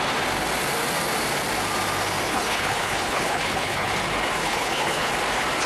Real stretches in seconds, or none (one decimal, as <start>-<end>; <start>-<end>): 0.0-2.3; 3.9-4.4; 5.1-5.7